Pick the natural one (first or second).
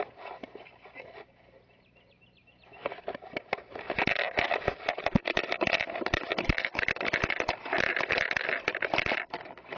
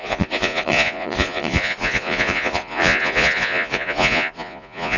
first